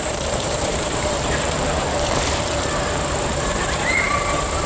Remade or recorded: remade